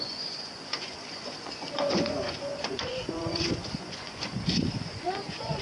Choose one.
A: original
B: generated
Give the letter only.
B